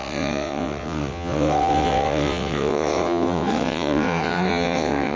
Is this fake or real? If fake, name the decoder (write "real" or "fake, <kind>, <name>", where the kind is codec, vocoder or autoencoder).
fake, vocoder, WaveNeXt